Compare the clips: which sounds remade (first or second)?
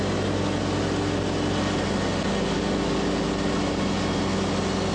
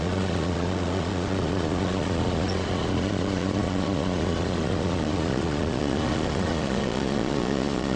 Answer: second